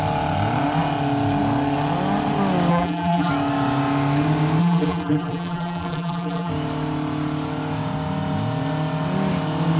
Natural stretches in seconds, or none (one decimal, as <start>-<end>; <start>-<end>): 0.0-2.7; 3.3-4.6; 6.5-9.8

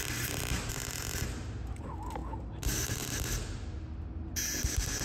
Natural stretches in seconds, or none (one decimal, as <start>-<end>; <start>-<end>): 0.0-1.8; 2.2-4.4

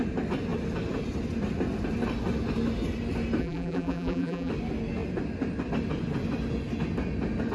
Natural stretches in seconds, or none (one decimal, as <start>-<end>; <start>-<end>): 0.0-3.4; 4.5-7.5